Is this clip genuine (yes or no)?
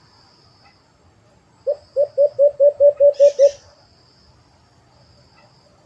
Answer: yes